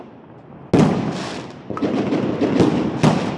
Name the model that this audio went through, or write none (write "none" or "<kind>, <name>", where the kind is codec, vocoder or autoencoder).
none